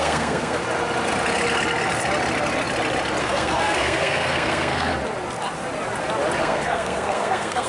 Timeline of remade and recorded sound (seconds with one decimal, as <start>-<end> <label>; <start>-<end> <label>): 0.0-0.6 remade; 0.6-3.2 recorded; 3.2-4.9 remade; 4.9-6.4 recorded; 6.4-7.7 remade